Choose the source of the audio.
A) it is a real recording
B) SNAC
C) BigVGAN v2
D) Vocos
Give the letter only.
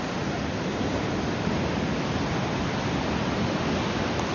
A